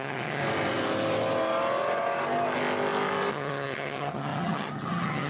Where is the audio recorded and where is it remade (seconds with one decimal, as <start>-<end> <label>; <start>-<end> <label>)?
0.0-0.4 remade; 0.4-3.3 recorded; 3.3-5.3 remade

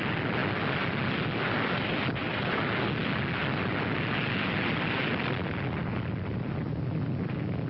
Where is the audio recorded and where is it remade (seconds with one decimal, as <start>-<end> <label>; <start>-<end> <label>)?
0.0-7.7 recorded

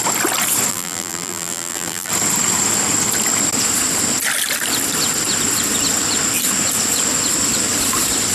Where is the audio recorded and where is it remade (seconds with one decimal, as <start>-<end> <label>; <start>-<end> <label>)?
0.0-0.7 recorded; 0.7-2.1 remade; 2.1-8.3 recorded

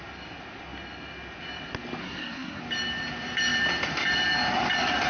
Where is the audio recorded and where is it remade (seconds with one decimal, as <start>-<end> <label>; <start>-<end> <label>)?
0.0-2.0 recorded; 2.0-2.6 remade; 2.6-5.1 recorded

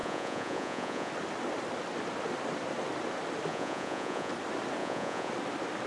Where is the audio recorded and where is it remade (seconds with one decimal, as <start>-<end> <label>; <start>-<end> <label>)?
0.0-1.1 remade; 1.1-3.5 recorded; 3.5-4.3 remade; 4.3-4.8 recorded; 4.8-5.3 remade; 5.3-5.9 recorded

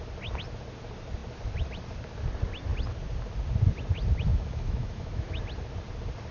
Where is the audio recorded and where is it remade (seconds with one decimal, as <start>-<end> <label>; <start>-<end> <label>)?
0.0-4.3 recorded; 4.3-5.4 remade; 5.4-6.3 recorded

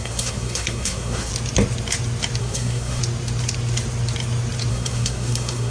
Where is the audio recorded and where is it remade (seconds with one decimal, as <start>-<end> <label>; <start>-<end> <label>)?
0.0-1.3 remade; 1.3-2.4 recorded; 2.4-3.0 remade; 3.0-4.7 recorded; 4.7-5.7 remade

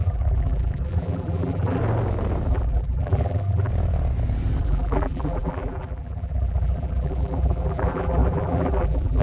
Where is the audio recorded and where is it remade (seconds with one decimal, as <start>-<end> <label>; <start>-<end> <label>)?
0.0-1.8 remade; 1.8-2.5 recorded; 2.5-3.7 remade; 3.7-4.6 recorded; 4.6-9.2 remade